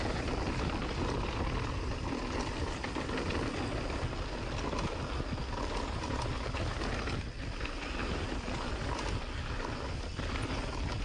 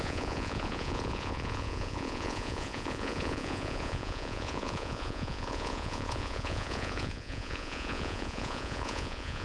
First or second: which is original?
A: first